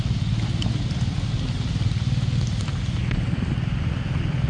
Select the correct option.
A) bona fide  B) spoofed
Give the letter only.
A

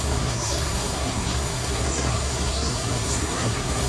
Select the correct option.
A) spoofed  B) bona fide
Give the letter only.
A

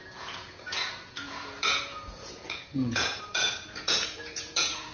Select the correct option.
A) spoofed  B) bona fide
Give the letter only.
A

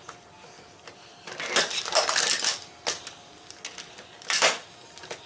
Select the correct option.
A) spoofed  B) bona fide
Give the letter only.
B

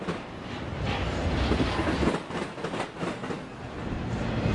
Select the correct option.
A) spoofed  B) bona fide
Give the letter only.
B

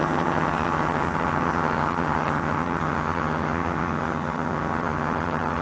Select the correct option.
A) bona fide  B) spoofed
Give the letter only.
B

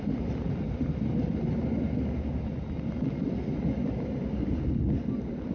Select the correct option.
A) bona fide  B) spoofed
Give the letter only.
A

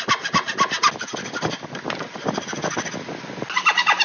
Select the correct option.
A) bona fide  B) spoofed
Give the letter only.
A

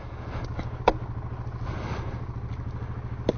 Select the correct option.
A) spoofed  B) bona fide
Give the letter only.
B